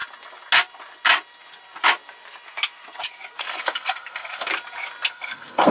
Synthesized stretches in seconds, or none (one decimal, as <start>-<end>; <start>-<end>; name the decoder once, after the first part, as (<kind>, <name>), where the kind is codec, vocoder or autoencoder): 3.4-4.5 (codec, SNAC); 5.1-5.7